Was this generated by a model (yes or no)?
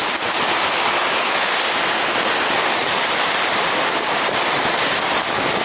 no